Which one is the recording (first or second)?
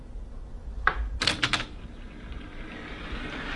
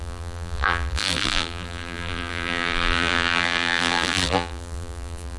first